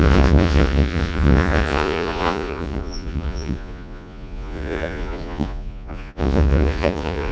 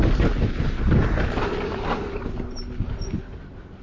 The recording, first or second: second